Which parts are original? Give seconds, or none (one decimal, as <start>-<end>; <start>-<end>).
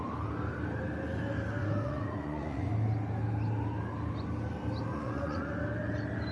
0.0-1.6; 2.7-4.9; 5.5-6.3